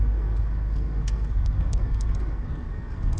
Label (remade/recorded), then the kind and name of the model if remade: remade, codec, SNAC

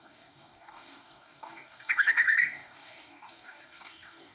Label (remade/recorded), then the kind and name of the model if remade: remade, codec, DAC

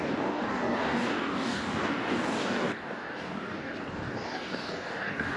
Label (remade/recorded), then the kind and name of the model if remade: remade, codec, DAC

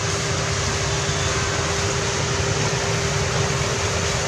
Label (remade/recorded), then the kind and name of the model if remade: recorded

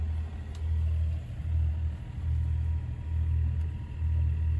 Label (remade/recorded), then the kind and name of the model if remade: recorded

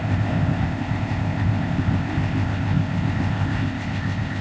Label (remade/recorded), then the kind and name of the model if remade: remade, codec, ZipCodec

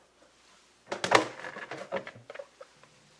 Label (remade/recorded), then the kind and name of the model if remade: recorded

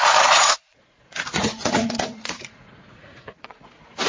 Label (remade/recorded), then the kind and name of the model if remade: remade, vocoder, Vocos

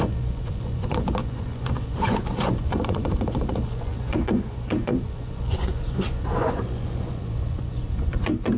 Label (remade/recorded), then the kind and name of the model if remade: remade, vocoder, Vocos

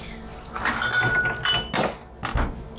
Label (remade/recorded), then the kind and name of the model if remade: recorded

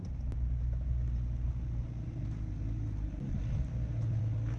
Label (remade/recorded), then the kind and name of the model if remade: recorded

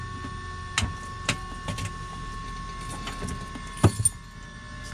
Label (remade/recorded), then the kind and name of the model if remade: recorded